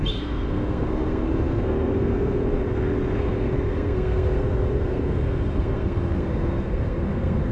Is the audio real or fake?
fake